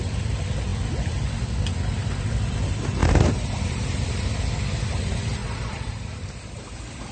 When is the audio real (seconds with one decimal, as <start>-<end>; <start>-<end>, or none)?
0.0-3.0; 4.5-5.4; 6.6-7.1